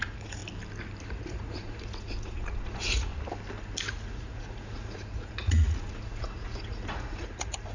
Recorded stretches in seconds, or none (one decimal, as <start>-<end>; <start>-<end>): 0.4-1.1; 3.1-3.9